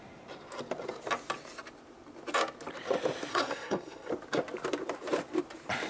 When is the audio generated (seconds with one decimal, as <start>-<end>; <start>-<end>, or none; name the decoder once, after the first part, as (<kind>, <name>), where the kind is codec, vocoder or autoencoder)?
3.3-4.1 (codec, SNAC)